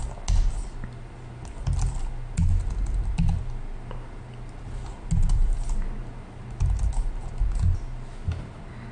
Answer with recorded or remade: recorded